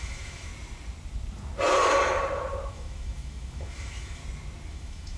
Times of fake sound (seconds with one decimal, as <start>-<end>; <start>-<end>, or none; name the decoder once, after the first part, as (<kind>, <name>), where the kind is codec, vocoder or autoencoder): 0.0-0.5 (autoencoder, DAC-VAE); 2.7-4.2; 4.7-5.2